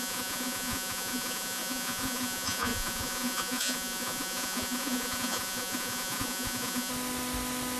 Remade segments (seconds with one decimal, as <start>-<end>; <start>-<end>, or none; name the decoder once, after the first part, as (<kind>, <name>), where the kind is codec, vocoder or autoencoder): 0.0-6.9 (vocoder, Vocos)